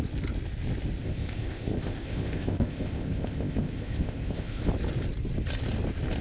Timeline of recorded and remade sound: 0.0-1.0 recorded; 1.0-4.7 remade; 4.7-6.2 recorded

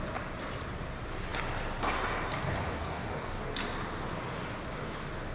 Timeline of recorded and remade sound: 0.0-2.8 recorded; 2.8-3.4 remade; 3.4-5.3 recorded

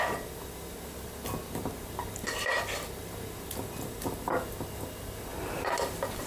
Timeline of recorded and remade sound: 0.0-6.3 recorded